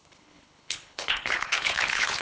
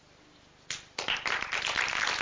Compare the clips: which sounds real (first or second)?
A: second